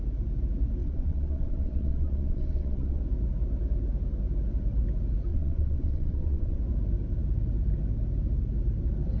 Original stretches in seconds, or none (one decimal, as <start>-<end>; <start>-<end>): 0.0-0.8; 3.0-5.3; 6.6-9.2